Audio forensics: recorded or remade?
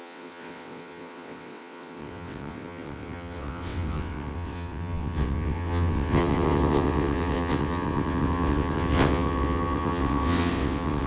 remade